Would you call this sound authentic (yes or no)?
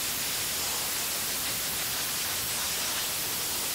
yes